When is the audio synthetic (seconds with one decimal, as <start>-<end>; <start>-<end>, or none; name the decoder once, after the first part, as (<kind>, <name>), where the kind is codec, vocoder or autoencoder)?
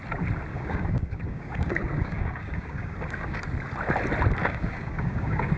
0.5-3.4 (codec, DAC); 4.4-5.6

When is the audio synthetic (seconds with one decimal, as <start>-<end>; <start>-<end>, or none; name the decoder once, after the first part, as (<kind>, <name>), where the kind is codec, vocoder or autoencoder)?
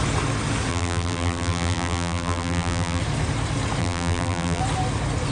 0.7-3.0 (vocoder, BigVGAN v2); 3.8-4.6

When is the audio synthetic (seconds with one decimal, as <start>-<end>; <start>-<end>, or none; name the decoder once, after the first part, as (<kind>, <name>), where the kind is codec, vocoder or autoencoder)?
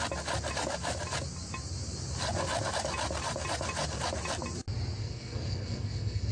5.0-6.3 (codec, SNAC)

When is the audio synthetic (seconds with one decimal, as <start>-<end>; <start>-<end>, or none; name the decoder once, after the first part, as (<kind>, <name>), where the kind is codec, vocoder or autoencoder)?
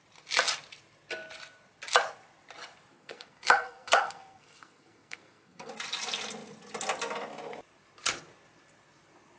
2.9-5.7 (codec, SNAC)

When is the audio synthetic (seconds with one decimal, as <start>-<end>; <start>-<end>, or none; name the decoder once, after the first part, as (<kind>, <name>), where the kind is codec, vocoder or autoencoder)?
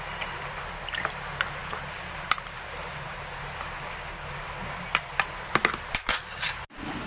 none